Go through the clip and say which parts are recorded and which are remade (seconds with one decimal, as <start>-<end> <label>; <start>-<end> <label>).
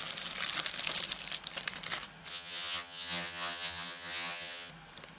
0.0-2.3 recorded; 2.3-4.7 remade; 4.7-5.2 recorded